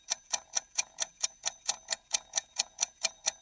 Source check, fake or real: fake